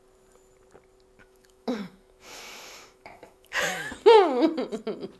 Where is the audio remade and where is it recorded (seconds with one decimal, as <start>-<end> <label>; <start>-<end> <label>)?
0.0-1.2 recorded; 1.2-3.9 remade; 3.9-5.2 recorded